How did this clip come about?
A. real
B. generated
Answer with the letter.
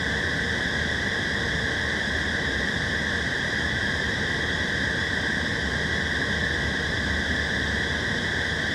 B